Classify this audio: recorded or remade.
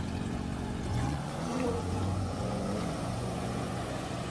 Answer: remade